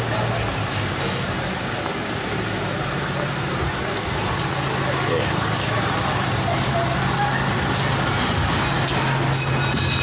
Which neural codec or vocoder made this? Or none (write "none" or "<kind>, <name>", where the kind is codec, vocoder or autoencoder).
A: none